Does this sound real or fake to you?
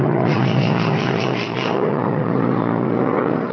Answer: fake